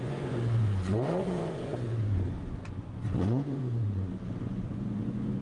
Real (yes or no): no